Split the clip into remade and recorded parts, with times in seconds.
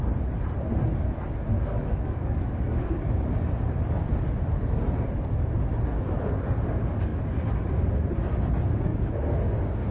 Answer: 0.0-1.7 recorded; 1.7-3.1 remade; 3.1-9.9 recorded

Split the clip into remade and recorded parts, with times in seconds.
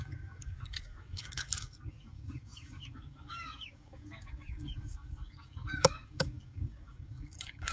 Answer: 0.0-7.7 remade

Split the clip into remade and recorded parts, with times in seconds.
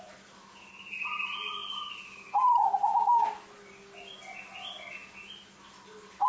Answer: 0.0-6.3 recorded